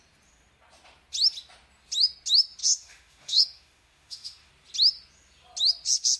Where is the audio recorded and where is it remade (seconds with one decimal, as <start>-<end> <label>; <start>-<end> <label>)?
0.0-2.6 recorded; 2.6-4.5 remade; 4.5-6.2 recorded